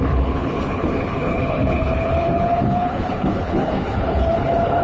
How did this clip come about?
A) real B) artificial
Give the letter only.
B